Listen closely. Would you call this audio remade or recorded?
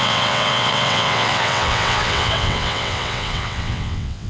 remade